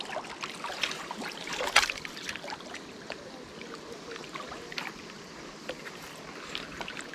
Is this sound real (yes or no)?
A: yes